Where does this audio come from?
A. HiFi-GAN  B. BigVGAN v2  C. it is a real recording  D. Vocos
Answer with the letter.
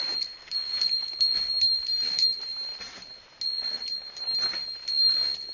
C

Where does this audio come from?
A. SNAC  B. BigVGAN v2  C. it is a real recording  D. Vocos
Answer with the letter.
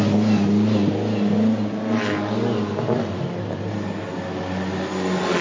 C